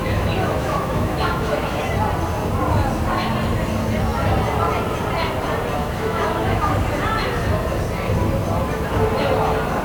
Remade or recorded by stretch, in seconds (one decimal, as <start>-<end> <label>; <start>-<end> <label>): 0.0-1.8 remade; 1.8-5.8 recorded; 5.8-6.7 remade; 6.7-9.8 recorded

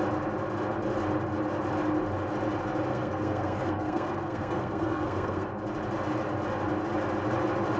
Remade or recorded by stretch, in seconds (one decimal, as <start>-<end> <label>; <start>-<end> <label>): 0.0-2.9 recorded; 2.9-5.5 remade; 5.5-7.8 recorded

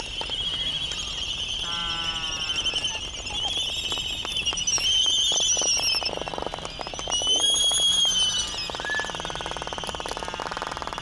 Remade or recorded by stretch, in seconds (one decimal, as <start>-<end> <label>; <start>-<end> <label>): 0.0-11.0 recorded

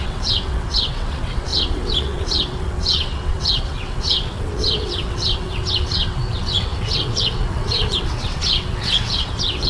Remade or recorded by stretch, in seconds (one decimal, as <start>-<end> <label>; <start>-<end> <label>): 0.0-9.7 remade

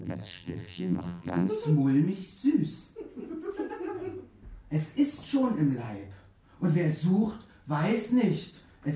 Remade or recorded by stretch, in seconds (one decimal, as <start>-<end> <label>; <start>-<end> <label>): 0.0-1.5 remade; 1.5-9.0 recorded

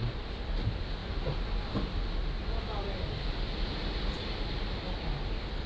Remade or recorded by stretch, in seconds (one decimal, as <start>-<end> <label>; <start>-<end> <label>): 0.0-5.7 recorded

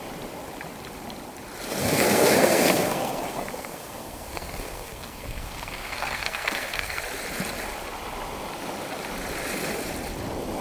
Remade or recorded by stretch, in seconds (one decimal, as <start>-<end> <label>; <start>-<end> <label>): 0.0-1.8 recorded; 1.8-7.0 remade; 7.0-10.6 recorded